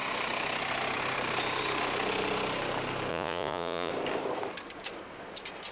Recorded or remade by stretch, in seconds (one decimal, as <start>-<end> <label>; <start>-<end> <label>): 0.0-3.1 recorded; 3.1-3.9 remade; 3.9-5.7 recorded